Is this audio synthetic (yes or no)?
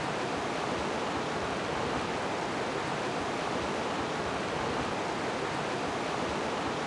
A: no